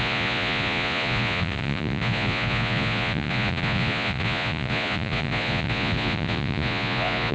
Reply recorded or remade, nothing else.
remade